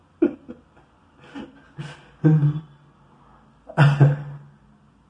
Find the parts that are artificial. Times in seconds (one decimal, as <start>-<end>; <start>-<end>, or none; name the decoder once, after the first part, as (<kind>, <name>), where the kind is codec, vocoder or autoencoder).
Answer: none

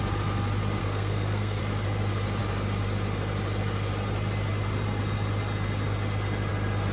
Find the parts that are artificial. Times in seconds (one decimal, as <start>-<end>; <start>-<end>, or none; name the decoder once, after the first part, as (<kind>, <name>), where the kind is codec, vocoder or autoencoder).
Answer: 0.8-1.6 (codec, SNAC)

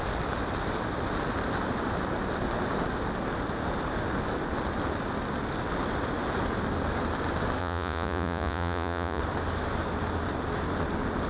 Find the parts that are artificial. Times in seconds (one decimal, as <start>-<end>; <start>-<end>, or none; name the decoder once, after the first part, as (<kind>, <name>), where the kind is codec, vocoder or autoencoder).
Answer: 7.6-9.2 (vocoder, Vocos)

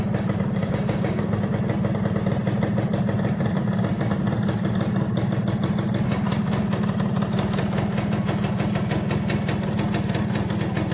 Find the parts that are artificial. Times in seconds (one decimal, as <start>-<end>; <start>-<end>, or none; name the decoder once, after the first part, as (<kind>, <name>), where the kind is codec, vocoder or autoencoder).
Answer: 0.6-1.3 (codec, DAC)